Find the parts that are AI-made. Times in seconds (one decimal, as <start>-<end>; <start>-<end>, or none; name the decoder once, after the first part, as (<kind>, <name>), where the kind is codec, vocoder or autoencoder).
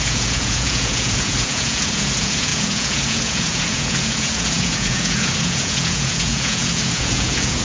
0.0-7.6 (vocoder, Vocos)